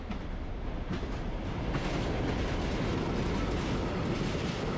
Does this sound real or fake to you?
real